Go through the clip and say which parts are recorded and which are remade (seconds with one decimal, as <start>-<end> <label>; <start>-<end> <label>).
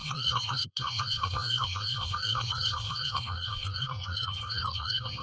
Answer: 0.0-5.2 remade